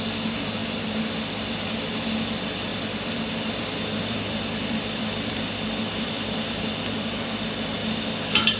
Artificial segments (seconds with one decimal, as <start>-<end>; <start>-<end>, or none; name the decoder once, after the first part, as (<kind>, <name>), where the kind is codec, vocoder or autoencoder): 2.7-6.6 (vocoder, BigVGAN v2)